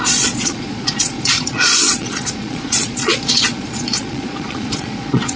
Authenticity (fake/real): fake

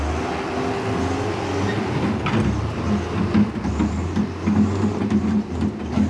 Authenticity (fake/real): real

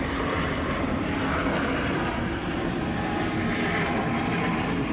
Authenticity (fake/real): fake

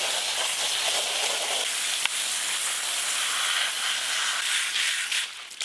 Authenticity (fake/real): real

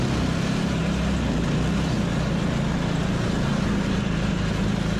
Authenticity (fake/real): real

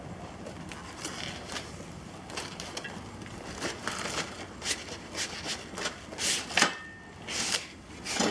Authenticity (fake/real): real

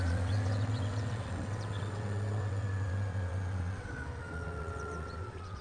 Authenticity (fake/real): fake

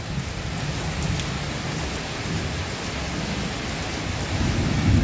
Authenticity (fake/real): real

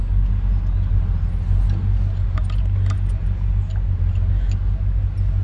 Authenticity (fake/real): real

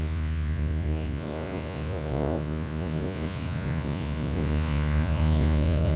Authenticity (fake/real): fake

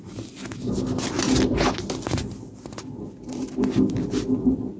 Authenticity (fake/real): real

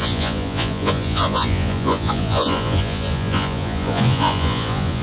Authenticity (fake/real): fake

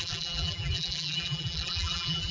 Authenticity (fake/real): fake